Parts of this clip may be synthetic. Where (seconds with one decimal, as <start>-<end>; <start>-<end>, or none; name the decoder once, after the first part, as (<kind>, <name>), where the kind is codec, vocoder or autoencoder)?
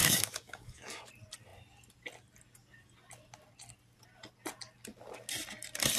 0.0-1.1 (codec, DAC)